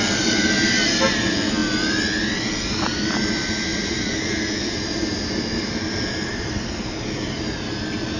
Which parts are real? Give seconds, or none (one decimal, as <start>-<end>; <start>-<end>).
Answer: 0.0-3.7; 5.0-6.3; 6.8-8.2

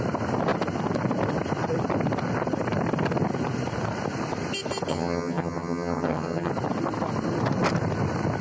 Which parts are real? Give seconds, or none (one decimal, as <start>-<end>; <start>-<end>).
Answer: 0.0-4.9; 6.5-8.4